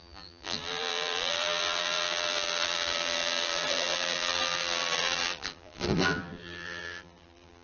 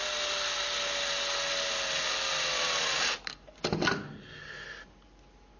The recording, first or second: second